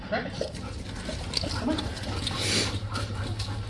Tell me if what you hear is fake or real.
real